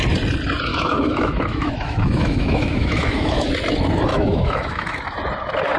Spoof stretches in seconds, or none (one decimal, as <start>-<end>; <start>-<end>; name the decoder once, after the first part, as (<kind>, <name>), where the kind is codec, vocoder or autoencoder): 0.7-3.5 (autoencoder, DAC-VAE); 4.1-5.0